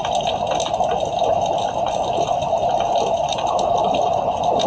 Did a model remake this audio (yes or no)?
no